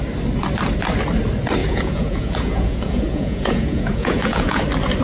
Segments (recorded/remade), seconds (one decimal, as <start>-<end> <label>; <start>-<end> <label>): 0.0-1.6 recorded; 1.6-4.6 remade; 4.6-5.0 recorded